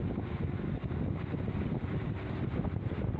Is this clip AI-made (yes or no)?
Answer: no